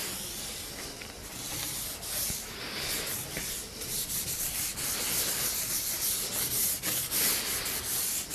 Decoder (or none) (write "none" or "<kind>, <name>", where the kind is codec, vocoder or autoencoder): none